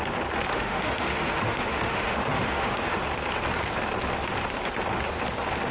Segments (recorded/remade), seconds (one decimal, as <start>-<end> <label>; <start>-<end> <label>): 0.0-0.5 recorded; 0.5-3.0 remade; 3.0-5.7 recorded